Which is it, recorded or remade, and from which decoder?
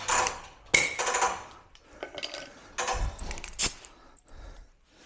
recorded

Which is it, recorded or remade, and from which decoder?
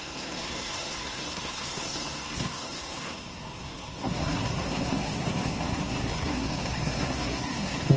remade, codec, SNAC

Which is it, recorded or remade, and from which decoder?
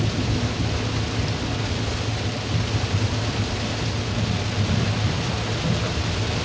recorded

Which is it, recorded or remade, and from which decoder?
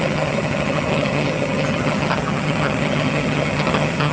remade, vocoder, HiFi-GAN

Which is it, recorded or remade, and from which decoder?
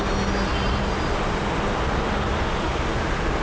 recorded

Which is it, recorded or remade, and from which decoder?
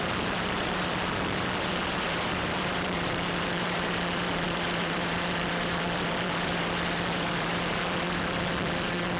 remade, vocoder, BigVGAN v2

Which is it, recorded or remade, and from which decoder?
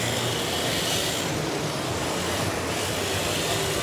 recorded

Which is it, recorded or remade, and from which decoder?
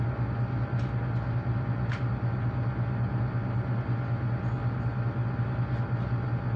recorded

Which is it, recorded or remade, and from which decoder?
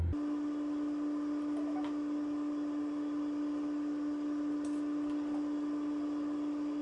recorded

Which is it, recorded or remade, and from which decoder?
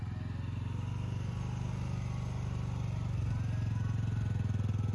recorded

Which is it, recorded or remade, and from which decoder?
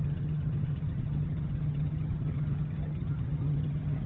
remade, vocoder, HiFi-GAN